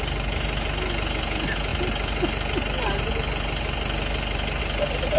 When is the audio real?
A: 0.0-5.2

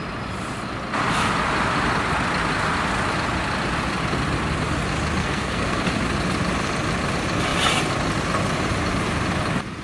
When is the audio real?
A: 0.0-5.2; 5.8-9.8

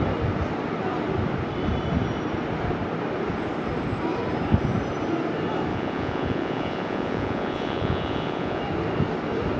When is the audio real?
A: 0.0-5.7; 8.6-9.6

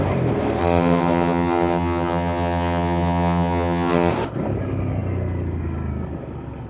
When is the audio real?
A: 0.0-0.6; 4.1-6.7